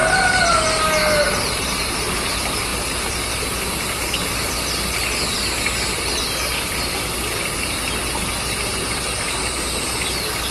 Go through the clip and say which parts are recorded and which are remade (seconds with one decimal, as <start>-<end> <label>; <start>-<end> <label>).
0.0-10.5 recorded